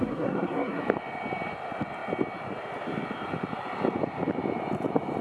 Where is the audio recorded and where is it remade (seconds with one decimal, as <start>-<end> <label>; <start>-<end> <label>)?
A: 0.0-0.8 remade; 0.8-5.2 recorded